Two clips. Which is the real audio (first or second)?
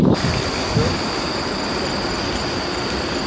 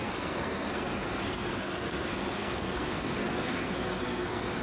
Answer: first